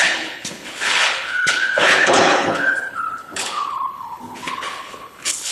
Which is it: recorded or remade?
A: remade